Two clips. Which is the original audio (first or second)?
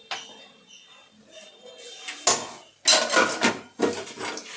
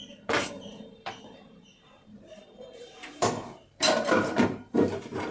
first